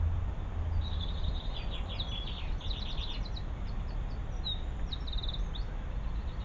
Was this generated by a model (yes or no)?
yes